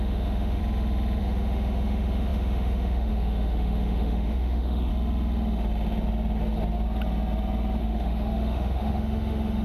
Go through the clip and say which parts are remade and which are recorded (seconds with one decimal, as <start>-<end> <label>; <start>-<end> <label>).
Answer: 0.0-0.6 remade; 0.6-1.2 recorded; 1.2-4.9 remade; 4.9-7.8 recorded; 7.8-9.6 remade